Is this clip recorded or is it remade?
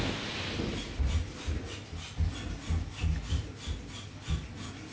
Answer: recorded